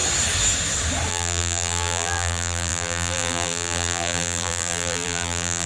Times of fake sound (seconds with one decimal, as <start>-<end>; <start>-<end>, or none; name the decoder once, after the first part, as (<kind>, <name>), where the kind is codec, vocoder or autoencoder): 1.1-5.7 (vocoder, BigVGAN v2)